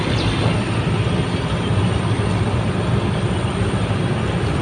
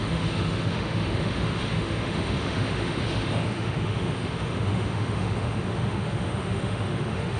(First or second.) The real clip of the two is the first